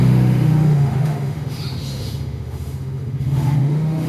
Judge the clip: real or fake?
fake